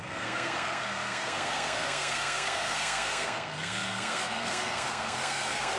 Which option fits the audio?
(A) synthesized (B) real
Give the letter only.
A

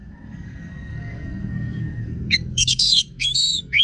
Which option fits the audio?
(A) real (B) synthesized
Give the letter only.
B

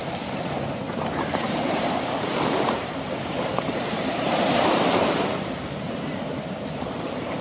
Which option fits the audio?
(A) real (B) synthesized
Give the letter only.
B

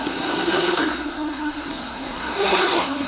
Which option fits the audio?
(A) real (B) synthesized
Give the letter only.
B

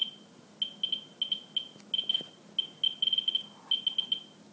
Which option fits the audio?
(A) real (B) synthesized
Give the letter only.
A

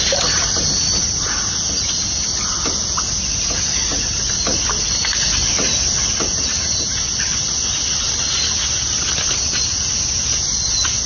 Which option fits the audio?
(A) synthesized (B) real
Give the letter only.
B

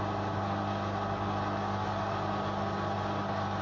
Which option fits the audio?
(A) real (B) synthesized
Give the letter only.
A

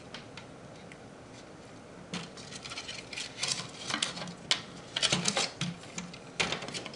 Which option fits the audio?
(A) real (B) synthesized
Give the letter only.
A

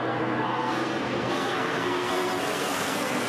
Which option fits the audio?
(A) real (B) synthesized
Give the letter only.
B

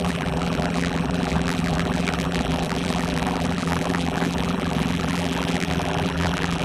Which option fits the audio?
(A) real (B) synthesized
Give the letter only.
B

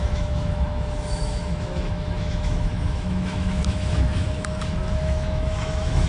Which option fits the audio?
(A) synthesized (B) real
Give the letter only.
A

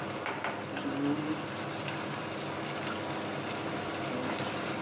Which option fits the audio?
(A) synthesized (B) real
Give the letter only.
B